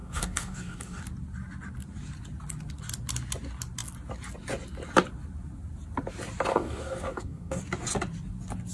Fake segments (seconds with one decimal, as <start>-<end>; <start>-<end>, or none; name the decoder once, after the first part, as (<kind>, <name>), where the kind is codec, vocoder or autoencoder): 0.0-1.0 (codec, DAC); 6.5-7.6